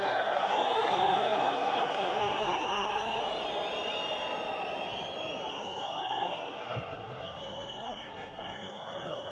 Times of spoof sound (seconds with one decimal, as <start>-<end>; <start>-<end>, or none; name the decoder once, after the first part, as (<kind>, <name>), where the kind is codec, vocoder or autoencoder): 0.0-3.2 (codec, SNAC); 5.5-9.3